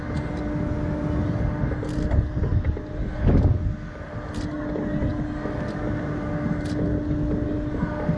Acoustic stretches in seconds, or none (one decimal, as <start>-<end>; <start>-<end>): 0.0-8.2